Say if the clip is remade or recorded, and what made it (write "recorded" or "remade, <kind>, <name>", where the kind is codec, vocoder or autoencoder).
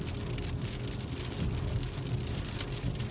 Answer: recorded